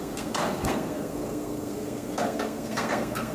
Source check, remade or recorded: remade